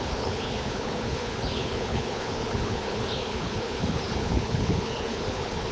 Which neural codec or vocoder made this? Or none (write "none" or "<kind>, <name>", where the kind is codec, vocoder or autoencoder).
codec, HILCodec